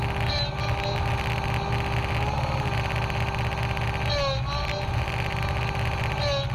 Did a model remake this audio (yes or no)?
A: no